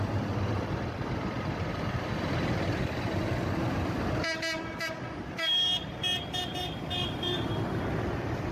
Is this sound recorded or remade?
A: recorded